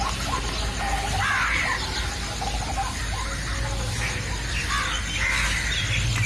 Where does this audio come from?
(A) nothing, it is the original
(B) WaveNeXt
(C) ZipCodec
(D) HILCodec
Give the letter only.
A